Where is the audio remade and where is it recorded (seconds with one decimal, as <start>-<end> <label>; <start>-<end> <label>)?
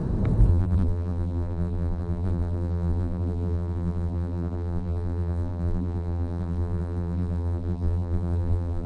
0.0-0.5 recorded; 0.5-8.9 remade